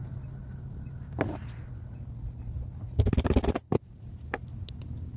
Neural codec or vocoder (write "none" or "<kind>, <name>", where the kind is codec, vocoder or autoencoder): none